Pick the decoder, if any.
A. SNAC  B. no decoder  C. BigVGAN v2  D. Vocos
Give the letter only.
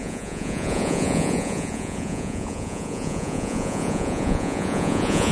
D